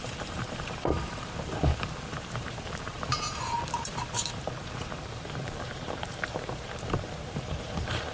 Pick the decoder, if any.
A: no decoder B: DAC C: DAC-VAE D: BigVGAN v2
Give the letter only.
D